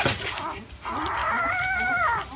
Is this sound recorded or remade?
recorded